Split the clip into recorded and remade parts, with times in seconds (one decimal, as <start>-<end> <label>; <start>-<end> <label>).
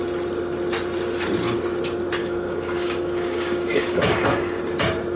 0.0-2.2 recorded; 2.2-4.6 remade; 4.6-5.2 recorded